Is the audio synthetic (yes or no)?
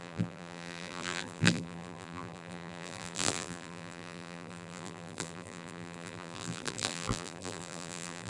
yes